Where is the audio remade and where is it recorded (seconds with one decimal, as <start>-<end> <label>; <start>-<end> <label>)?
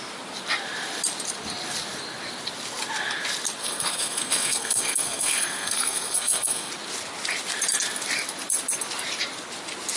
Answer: 0.0-3.6 recorded; 3.6-6.7 remade; 6.7-10.0 recorded